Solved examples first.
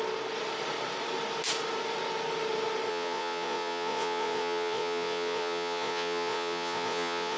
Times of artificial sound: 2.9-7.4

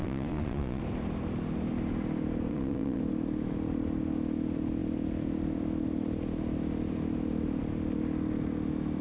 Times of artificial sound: 0.0-0.8; 2.5-3.0